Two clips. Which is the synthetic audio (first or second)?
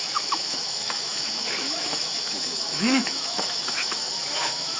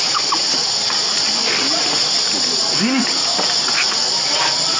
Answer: first